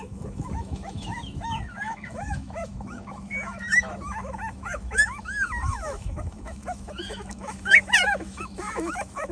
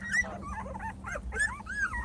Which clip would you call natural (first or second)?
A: second